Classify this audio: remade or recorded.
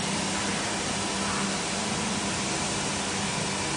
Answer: recorded